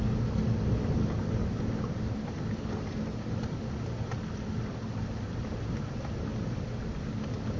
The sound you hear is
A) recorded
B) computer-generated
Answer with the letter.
A